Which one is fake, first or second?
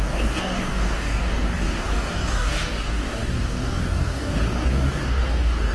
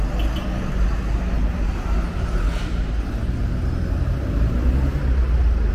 first